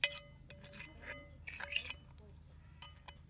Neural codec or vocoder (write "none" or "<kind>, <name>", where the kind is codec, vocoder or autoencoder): none